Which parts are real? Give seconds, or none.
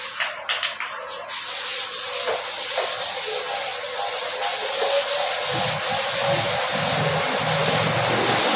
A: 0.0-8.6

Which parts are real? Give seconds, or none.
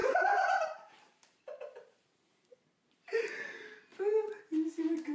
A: 2.3-3.9; 4.5-5.1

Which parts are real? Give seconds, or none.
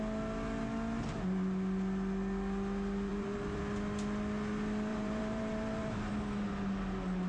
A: 0.0-3.1; 3.6-4.9; 6.1-7.3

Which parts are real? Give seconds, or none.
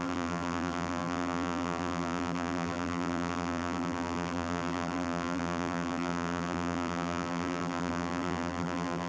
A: none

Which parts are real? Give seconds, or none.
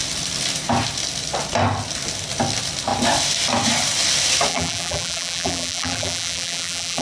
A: 0.0-4.5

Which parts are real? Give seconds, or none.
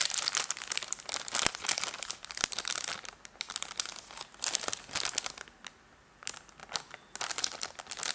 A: 0.0-8.1